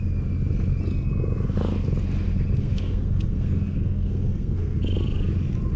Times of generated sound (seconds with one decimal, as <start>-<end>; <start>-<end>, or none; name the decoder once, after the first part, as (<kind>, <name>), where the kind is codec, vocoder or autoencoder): 2.6-4.8 (codec, SNAC)